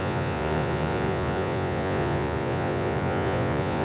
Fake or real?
fake